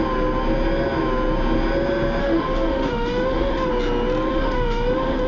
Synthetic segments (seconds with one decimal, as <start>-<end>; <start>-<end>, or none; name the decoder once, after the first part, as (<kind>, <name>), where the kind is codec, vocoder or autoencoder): 2.2-3.7 (autoencoder, DAC-VAE); 4.3-5.3

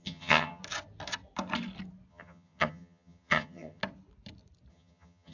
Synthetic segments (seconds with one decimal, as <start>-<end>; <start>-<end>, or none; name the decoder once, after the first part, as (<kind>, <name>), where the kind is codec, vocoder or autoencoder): 0.0-0.6 (vocoder, HiFi-GAN); 2.1-3.8; 4.7-5.3

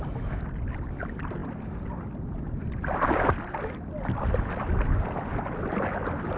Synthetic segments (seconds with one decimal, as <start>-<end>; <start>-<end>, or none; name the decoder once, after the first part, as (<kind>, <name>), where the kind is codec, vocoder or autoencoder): none

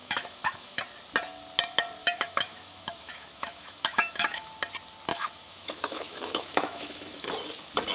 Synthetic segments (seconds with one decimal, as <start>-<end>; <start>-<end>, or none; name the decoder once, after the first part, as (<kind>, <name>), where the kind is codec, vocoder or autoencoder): 0.0-0.8 (autoencoder, DAC-VAE); 2.0-4.5; 5.1-7.3

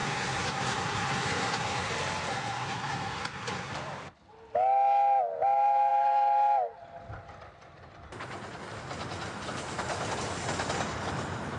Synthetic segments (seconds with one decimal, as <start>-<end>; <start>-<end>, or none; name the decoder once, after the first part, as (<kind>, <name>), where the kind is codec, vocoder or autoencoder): 0.0-1.9 (codec, SNAC); 2.3-3.7